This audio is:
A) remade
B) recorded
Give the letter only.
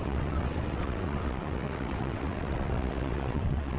A